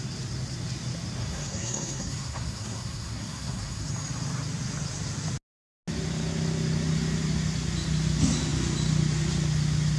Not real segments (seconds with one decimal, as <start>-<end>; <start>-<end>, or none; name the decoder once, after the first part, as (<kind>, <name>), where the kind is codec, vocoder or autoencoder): 1.2-3.9 (codec, SNAC)